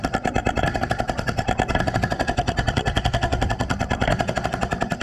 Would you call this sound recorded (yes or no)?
no